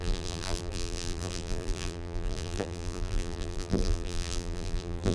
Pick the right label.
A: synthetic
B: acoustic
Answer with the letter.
A